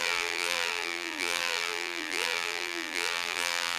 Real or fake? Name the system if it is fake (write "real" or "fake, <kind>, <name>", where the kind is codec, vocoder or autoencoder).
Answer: fake, vocoder, BigVGAN v2